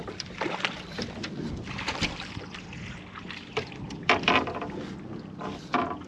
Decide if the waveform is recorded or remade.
recorded